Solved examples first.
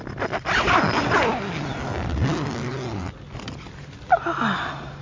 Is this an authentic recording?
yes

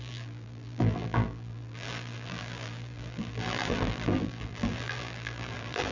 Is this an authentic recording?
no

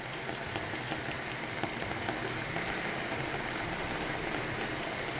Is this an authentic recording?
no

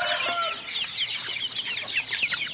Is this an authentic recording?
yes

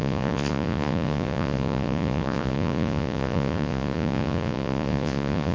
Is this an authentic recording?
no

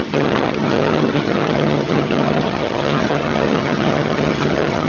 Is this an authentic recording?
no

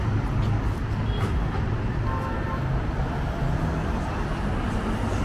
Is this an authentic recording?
yes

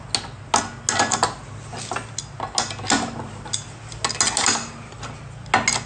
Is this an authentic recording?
yes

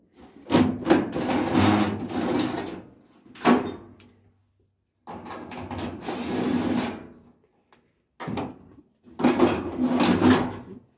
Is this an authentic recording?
yes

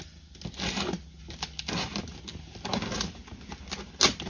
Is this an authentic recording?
yes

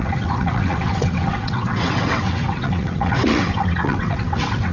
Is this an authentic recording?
no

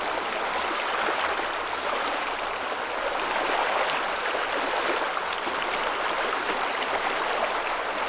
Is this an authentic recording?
yes